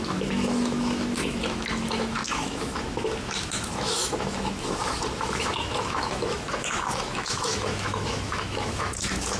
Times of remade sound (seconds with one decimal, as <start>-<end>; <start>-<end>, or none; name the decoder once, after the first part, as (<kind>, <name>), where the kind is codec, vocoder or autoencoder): 0.0-9.4 (autoencoder, DAC-VAE)